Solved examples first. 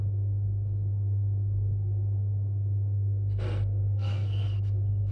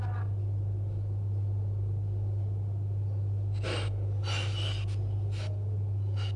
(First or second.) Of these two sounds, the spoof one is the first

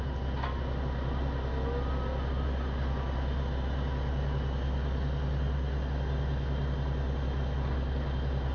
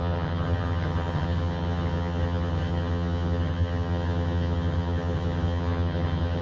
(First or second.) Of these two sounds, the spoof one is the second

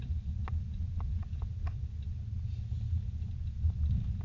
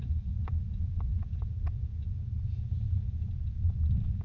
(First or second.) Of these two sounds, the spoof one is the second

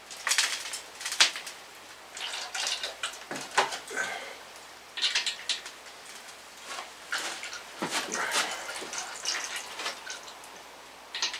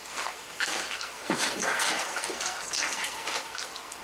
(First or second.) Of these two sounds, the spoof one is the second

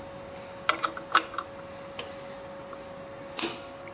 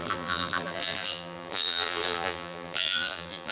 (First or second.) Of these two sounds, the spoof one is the second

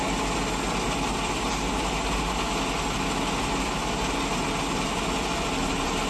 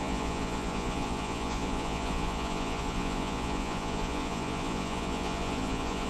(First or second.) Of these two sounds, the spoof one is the second